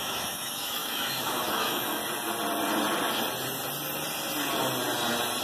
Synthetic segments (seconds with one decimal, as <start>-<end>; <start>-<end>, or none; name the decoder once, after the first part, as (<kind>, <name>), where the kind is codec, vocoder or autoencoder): 0.0-2.0 (autoencoder, DAC-VAE)